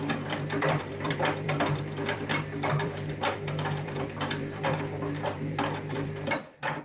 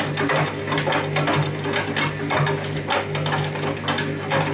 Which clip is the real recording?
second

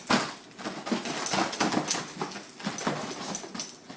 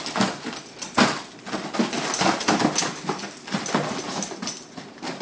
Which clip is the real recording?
first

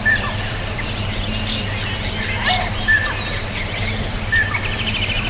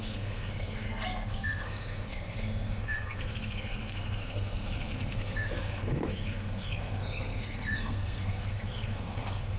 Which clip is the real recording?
first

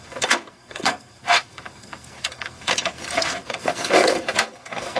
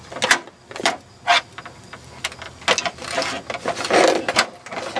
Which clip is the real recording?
second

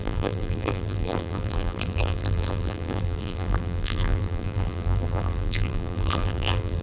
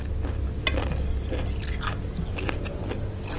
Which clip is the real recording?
second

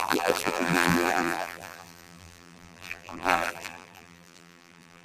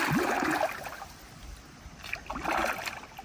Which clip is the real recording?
second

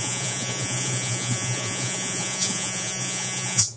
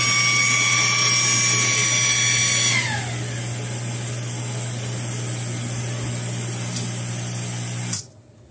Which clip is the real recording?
second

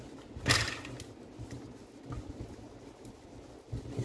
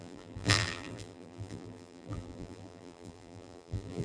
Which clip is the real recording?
first